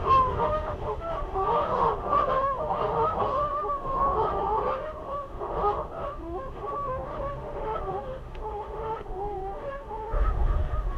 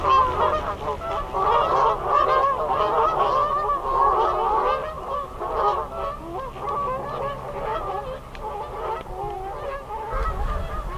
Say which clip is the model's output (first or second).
first